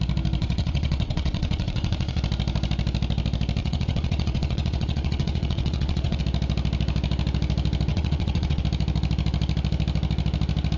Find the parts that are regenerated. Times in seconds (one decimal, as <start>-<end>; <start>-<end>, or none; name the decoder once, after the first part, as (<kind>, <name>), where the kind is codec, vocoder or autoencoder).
0.4-2.2 (vocoder, WaveNeXt); 3.6-6.2; 7.9-8.6